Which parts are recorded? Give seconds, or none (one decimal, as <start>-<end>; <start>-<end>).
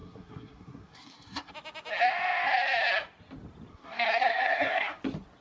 1.5-3.7; 5.0-5.4